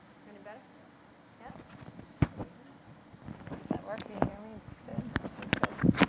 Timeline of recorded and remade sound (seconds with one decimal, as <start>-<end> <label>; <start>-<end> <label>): 0.0-2.4 recorded; 2.4-4.1 remade; 4.1-6.1 recorded